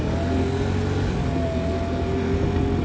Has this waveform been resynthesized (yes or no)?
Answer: no